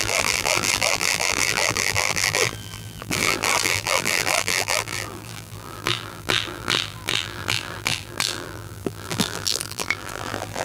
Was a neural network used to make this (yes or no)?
yes